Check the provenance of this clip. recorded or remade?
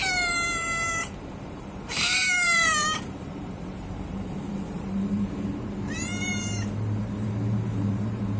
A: remade